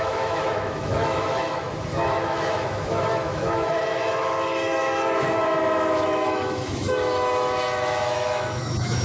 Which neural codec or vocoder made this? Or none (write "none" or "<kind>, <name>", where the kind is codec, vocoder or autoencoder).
autoencoder, DAC-VAE